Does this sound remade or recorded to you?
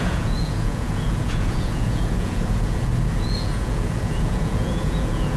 remade